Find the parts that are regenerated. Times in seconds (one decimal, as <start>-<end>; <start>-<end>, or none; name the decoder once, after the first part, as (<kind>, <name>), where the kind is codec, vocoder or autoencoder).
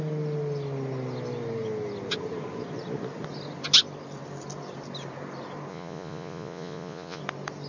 5.7-7.2 (vocoder, Vocos)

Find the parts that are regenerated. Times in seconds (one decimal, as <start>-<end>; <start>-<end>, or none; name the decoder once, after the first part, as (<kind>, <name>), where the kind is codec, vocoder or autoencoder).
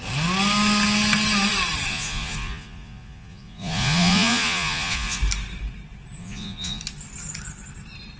1.9-5.2 (vocoder, Vocos); 6.2-6.8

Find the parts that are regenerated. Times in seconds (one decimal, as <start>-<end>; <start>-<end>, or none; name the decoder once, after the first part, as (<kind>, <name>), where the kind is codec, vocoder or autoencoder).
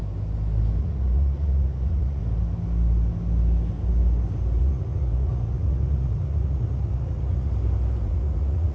0.8-2.2 (vocoder, Vocos); 4.6-7.5; 8.0-8.7